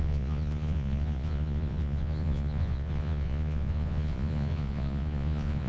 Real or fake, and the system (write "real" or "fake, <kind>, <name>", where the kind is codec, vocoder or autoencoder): fake, vocoder, Vocos